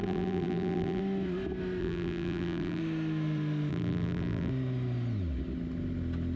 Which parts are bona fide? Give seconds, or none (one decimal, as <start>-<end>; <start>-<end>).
1.0-1.8; 2.8-3.7; 4.5-6.4